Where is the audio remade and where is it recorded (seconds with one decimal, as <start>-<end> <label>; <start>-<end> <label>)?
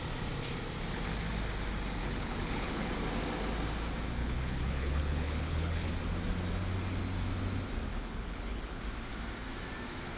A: 0.0-2.0 recorded; 2.0-2.9 remade; 2.9-4.2 recorded; 4.2-5.9 remade; 5.9-7.9 recorded; 7.9-8.8 remade; 8.8-10.2 recorded